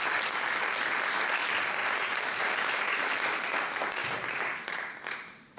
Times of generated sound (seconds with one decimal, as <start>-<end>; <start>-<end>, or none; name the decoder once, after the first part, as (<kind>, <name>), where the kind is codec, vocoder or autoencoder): 1.8-3.1 (vocoder, BigVGAN v2); 4.0-5.6